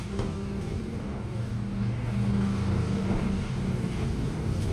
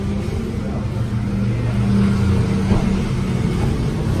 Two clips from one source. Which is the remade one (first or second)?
first